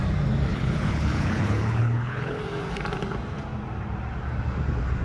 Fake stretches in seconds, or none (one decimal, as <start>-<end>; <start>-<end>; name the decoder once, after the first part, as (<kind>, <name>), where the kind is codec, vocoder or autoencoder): 0.5-2.4 (codec, HILCodec)